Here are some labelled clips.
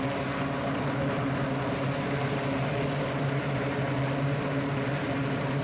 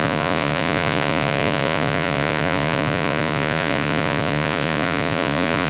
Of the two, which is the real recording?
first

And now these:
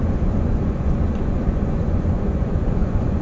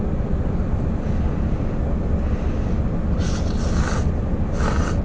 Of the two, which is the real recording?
second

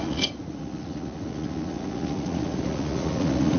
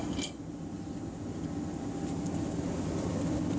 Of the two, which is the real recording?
second